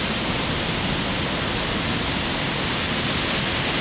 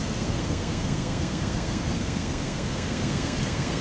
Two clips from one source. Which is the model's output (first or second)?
second